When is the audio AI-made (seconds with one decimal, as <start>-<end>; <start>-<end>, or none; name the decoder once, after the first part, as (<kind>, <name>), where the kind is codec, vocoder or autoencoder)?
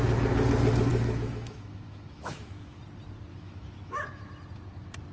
0.9-2.8 (autoencoder, DAC-VAE); 3.3-4.2